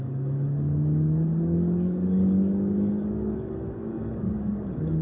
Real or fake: fake